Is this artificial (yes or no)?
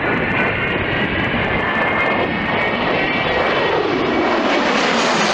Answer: yes